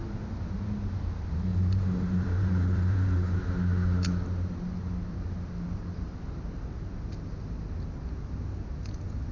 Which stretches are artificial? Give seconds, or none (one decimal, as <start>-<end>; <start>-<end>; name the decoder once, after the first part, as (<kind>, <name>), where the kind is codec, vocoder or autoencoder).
1.5-3.4 (vocoder, BigVGAN v2)